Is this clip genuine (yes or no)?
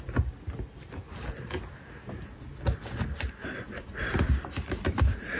yes